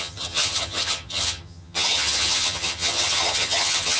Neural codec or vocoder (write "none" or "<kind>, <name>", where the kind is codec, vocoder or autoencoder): vocoder, HiFi-GAN